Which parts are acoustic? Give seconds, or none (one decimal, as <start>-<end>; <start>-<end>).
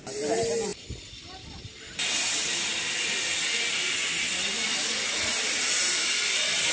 0.0-6.7